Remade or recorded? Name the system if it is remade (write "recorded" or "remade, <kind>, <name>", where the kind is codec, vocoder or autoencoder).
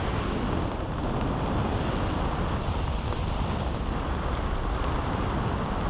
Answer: recorded